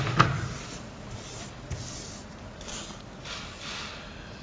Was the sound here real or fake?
real